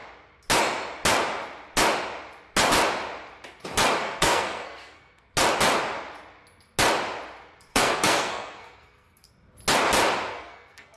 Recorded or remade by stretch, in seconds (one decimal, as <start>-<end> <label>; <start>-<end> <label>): 0.0-4.0 recorded; 4.0-5.3 remade; 5.3-7.7 recorded; 7.7-9.3 remade; 9.3-10.3 recorded; 10.3-11.0 remade